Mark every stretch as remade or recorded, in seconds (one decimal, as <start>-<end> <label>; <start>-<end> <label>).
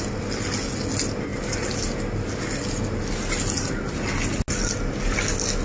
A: 0.0-5.6 recorded